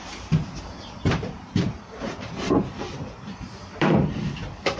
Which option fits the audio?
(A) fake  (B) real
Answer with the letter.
A